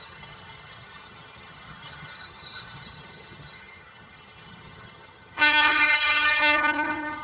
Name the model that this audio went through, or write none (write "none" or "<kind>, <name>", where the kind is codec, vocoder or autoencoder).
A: vocoder, HiFi-GAN